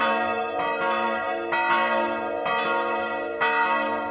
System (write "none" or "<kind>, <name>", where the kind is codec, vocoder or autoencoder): none